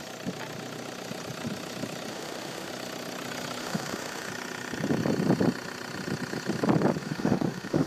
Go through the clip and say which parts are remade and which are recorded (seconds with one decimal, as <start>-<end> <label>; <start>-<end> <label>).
0.0-2.1 recorded; 2.1-2.7 remade; 2.7-3.6 recorded; 3.6-4.3 remade; 4.3-7.0 recorded; 7.0-7.9 remade